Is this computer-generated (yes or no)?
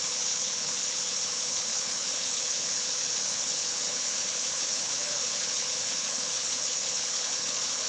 yes